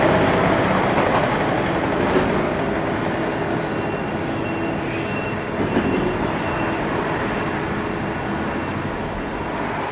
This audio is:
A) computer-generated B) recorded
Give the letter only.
B